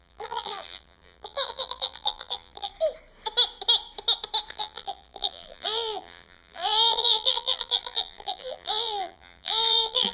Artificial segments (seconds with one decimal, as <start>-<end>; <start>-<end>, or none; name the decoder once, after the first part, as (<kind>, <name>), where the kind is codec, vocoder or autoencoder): 0.0-2.7 (vocoder, BigVGAN v2); 4.5-10.1